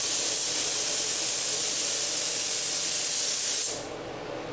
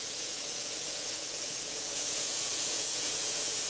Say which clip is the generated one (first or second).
second